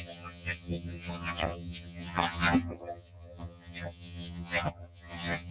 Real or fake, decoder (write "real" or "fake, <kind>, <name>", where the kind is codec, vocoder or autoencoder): fake, vocoder, HiFi-GAN